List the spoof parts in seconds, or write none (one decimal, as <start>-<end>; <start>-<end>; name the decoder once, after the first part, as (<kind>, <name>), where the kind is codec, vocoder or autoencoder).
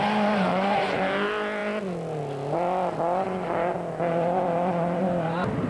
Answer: 0.5-1.0 (vocoder, Vocos)